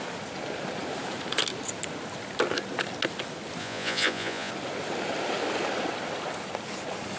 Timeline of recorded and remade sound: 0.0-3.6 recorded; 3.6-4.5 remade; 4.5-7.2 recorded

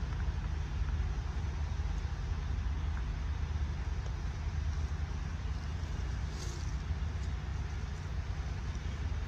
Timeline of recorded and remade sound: 0.0-9.3 recorded

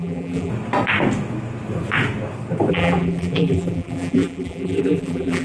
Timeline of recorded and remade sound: 0.0-0.5 remade; 0.5-2.7 recorded; 2.7-5.4 remade

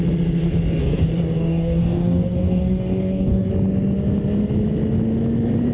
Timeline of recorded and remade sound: 0.0-0.8 recorded; 0.8-3.5 remade; 3.5-5.7 recorded

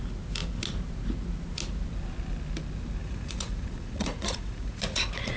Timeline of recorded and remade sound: 0.0-3.0 recorded; 3.0-5.4 remade